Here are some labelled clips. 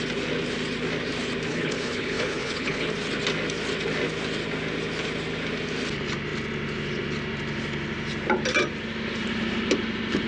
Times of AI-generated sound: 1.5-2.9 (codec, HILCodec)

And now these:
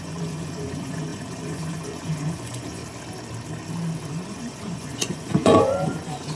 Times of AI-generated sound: 0.0-2.8 (vocoder, Vocos); 4.1-6.4

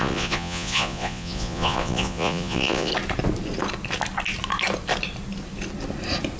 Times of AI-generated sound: 0.0-2.9 (vocoder, Vocos)

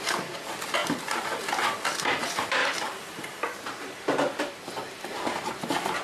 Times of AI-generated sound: 0.0-0.8 (vocoder, BigVGAN v2); 2.2-6.0